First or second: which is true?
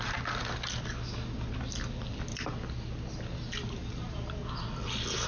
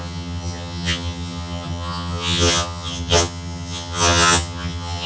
first